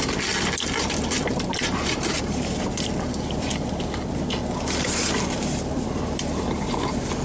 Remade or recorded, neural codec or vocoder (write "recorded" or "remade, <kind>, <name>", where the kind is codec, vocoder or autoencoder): recorded